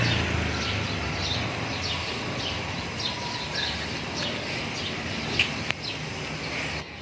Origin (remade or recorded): recorded